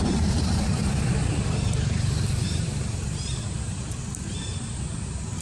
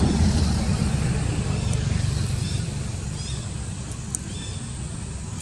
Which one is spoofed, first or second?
first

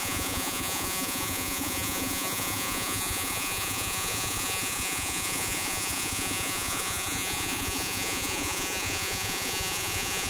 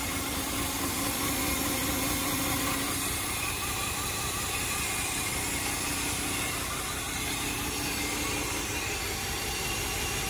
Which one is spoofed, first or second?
first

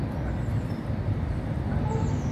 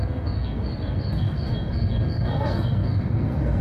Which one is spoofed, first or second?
second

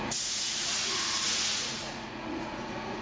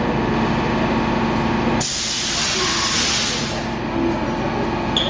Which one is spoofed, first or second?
first